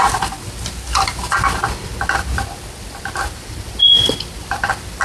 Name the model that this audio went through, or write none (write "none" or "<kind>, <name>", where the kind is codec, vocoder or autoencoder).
none